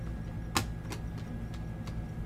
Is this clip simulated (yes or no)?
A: no